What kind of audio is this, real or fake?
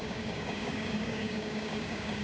fake